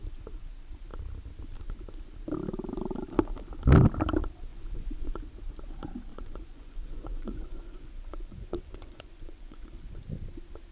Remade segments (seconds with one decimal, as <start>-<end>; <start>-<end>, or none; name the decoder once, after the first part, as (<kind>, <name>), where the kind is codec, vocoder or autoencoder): 4.5-5.2 (vocoder, Vocos); 6.1-9.9